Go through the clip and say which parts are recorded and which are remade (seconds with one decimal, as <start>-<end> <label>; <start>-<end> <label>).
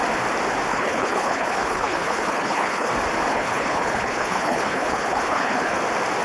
0.0-0.7 recorded; 0.7-2.9 remade; 2.9-3.3 recorded; 3.3-5.8 remade; 5.8-6.2 recorded